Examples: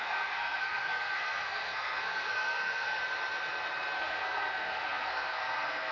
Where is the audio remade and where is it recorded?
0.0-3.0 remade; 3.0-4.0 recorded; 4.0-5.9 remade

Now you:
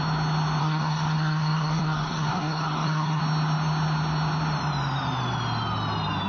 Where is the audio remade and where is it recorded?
0.0-0.6 recorded; 0.6-3.2 remade; 3.2-6.3 recorded

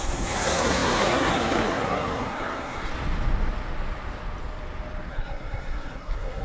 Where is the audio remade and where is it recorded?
0.0-2.9 remade; 2.9-5.1 recorded; 5.1-6.4 remade